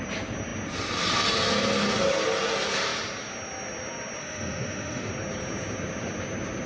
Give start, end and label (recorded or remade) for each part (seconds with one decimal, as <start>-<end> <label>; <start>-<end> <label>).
0.0-4.2 recorded; 4.2-5.1 remade; 5.1-6.7 recorded